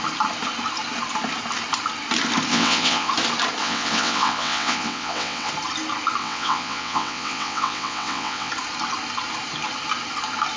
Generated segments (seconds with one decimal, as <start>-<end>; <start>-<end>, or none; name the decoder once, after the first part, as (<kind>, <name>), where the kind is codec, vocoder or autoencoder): 2.5-3.1 (vocoder, WaveNeXt); 3.6-5.5; 6.2-8.5